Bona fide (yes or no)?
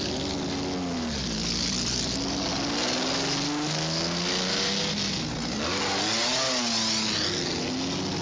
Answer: yes